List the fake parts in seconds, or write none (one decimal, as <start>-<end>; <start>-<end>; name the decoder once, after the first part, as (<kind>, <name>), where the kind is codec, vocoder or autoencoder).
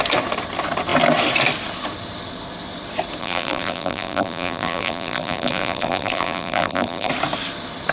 3.2-7.1 (vocoder, BigVGAN v2)